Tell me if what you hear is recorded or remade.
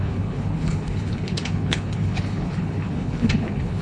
remade